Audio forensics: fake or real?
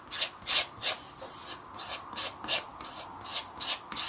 real